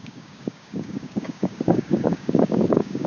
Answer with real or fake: fake